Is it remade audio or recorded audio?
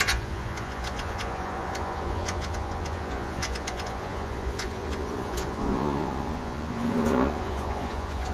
remade